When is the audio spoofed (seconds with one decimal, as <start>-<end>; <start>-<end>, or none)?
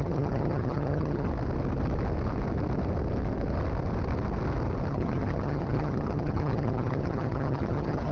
0.0-1.3; 4.9-8.1